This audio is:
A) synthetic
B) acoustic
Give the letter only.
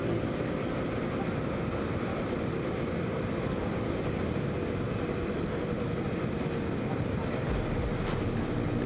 B